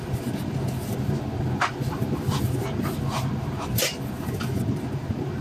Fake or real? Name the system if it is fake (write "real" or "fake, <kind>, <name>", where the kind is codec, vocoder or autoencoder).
real